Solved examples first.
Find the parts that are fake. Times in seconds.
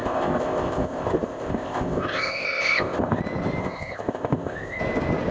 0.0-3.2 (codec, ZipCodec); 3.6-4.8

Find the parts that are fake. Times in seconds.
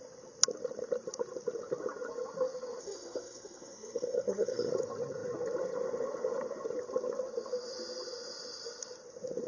2.8-4.7 (codec, SNAC)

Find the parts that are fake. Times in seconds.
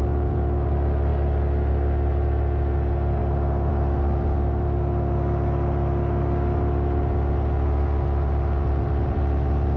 none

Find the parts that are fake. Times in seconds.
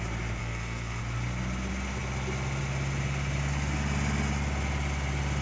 0.4-1.0 (codec, SNAC)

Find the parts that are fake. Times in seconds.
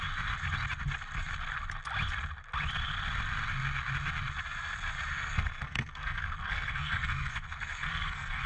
5.1-8.5 (codec, SNAC)